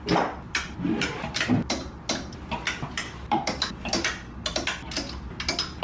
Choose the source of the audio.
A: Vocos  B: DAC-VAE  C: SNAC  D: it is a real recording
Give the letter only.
D